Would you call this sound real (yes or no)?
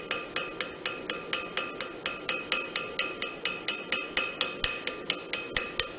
yes